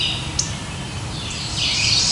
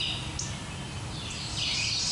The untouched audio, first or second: second